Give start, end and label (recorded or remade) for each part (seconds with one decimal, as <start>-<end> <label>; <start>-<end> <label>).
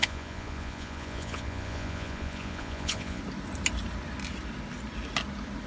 0.0-3.2 remade; 3.2-5.7 recorded